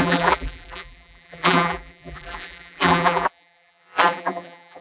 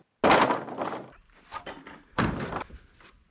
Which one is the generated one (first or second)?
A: first